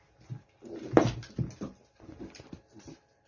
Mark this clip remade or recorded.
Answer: recorded